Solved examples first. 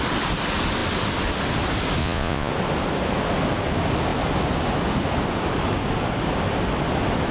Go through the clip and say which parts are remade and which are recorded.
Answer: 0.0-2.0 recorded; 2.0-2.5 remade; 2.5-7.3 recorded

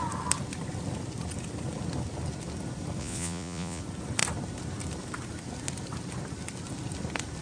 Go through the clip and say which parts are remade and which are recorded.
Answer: 0.0-3.0 recorded; 3.0-3.8 remade; 3.8-7.4 recorded

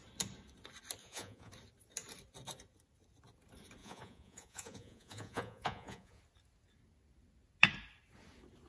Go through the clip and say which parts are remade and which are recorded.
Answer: 0.0-1.0 recorded; 1.0-1.5 remade; 1.5-3.8 recorded; 3.8-6.2 remade; 6.2-8.7 recorded

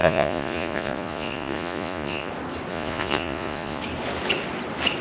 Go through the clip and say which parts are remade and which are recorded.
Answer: 0.0-2.3 remade; 2.3-2.7 recorded; 2.7-3.8 remade; 3.8-5.0 recorded

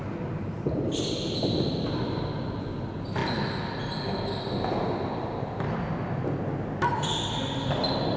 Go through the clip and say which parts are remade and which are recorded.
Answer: 0.0-8.2 recorded